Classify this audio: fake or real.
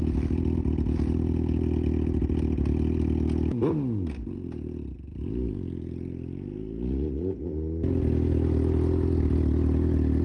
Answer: real